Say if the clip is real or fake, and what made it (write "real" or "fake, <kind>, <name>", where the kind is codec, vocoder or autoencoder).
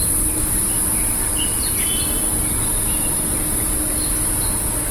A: real